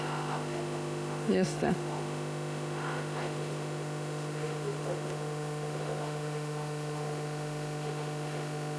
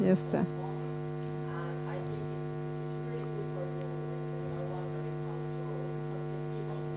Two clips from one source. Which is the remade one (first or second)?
first